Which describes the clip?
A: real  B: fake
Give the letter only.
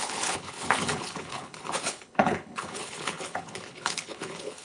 B